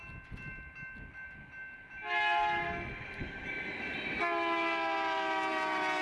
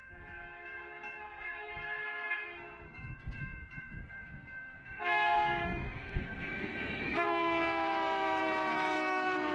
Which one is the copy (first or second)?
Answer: second